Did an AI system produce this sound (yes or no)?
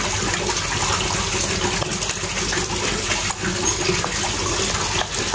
no